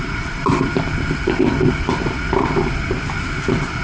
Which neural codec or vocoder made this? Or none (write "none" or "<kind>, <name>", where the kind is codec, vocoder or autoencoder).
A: none